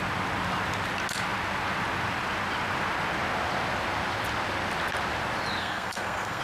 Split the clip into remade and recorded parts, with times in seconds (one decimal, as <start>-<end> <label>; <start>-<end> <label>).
0.0-5.6 recorded; 5.6-6.4 remade